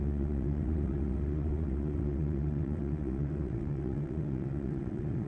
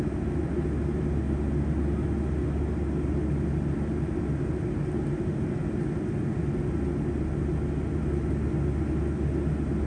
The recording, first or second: second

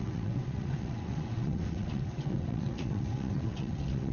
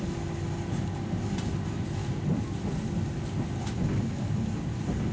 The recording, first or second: second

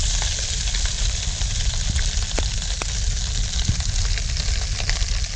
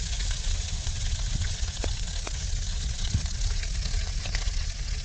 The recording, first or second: first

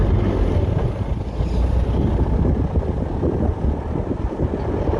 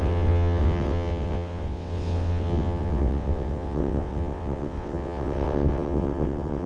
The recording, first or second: first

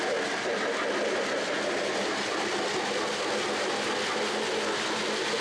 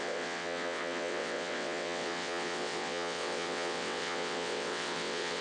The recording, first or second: first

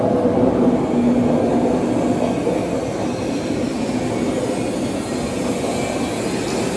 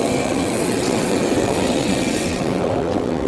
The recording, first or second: first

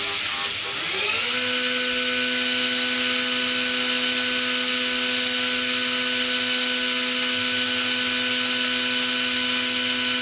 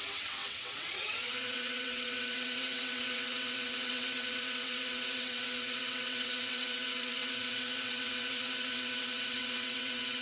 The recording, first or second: first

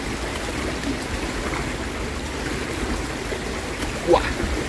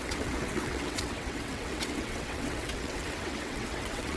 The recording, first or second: first